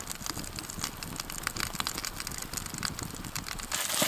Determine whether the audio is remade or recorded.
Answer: recorded